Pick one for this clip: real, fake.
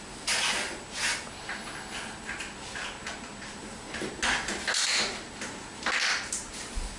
real